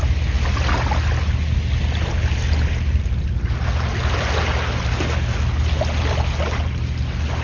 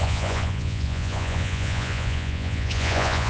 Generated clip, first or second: second